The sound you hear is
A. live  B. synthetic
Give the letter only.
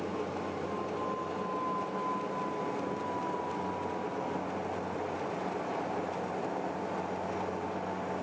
A